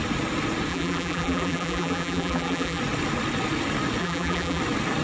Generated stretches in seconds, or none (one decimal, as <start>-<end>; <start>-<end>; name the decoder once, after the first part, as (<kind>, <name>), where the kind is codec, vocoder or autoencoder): 0.7-2.8 (vocoder, BigVGAN v2); 4.0-4.6